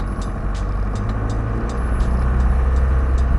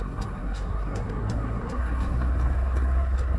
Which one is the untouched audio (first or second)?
first